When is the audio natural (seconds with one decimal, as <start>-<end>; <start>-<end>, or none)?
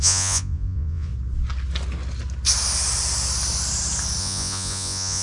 1.1-4.2